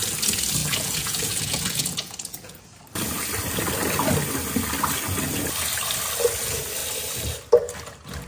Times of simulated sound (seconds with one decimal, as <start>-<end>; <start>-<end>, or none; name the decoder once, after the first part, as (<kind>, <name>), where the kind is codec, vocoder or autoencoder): 0.6-2.6 (vocoder, Vocos)